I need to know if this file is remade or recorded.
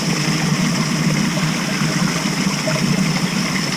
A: recorded